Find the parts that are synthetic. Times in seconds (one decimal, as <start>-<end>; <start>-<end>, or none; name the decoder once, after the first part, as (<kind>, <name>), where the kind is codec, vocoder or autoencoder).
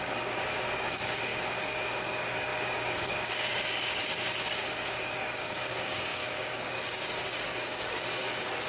0.0-8.7 (codec, DAC)